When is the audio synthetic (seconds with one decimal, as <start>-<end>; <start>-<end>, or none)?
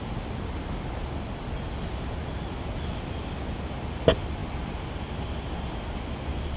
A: none